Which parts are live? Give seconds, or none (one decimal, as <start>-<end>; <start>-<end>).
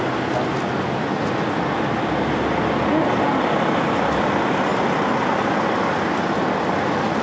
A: 0.0-7.2